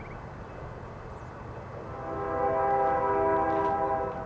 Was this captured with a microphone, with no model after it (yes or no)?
yes